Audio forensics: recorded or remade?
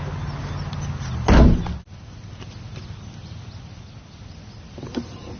recorded